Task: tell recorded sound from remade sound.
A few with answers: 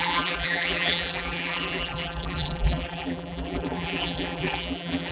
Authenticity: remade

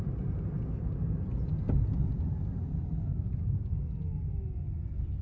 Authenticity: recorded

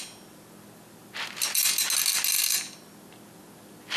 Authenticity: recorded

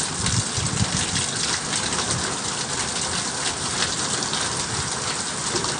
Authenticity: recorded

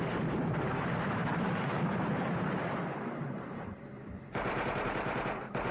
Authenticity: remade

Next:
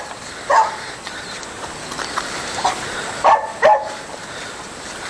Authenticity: recorded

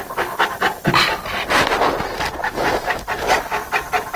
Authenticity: recorded